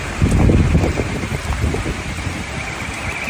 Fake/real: real